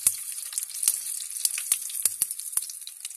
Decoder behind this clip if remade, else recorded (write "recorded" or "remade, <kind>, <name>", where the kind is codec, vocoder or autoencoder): recorded